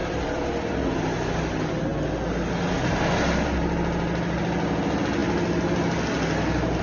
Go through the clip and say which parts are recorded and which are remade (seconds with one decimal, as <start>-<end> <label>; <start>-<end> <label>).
0.0-1.3 remade; 1.3-6.8 recorded